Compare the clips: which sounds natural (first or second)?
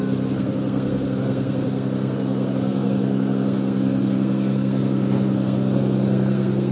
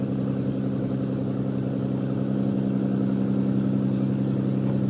second